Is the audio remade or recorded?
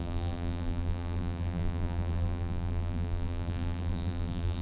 remade